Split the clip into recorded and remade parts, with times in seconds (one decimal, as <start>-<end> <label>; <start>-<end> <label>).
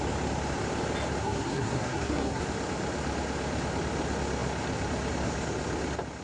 0.0-1.2 recorded; 1.2-2.4 remade; 2.4-6.2 recorded